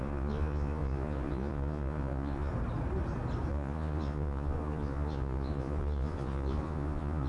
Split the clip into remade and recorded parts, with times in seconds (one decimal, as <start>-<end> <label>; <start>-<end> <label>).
0.0-2.5 remade; 2.5-3.5 recorded; 3.5-7.3 remade